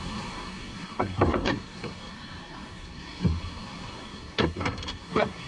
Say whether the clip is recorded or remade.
remade